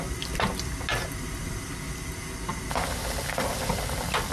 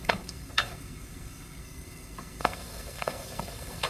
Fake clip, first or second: second